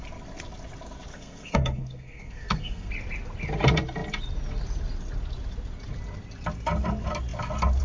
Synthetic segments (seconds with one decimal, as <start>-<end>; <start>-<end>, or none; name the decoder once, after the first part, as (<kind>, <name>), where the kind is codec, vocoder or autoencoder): 1.1-2.9 (codec, SNAC)